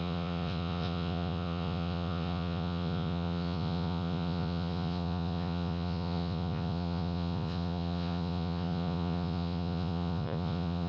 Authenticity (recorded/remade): remade